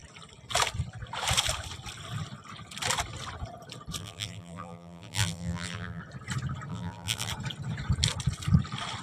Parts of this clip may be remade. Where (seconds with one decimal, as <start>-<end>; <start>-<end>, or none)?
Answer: 4.0-6.0; 6.7-7.3